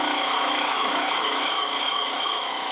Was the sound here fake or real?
fake